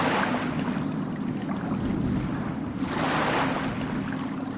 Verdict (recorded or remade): recorded